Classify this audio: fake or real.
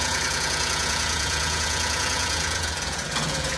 fake